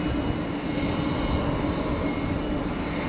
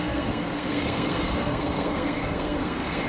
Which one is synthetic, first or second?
second